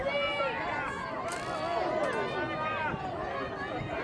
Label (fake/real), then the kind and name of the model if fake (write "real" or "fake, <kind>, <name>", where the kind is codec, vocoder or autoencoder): real